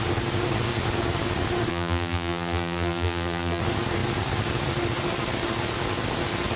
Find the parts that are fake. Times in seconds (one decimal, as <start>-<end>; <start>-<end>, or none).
1.7-3.6